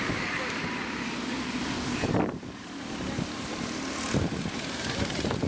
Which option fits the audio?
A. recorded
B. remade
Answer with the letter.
B